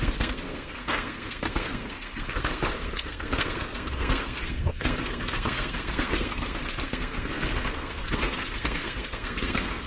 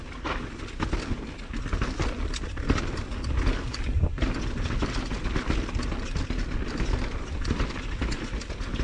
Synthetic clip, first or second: first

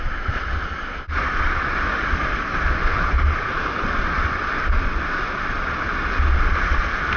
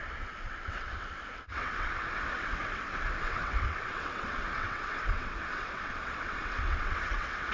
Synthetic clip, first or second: second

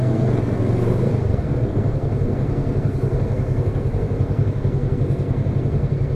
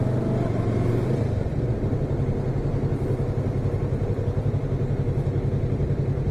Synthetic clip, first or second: first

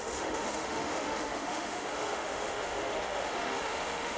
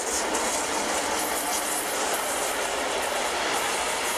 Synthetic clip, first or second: first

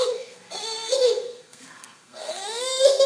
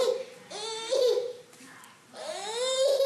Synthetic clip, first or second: first